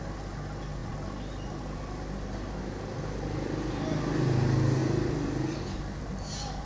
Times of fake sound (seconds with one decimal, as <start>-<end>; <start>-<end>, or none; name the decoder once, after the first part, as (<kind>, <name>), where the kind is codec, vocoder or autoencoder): none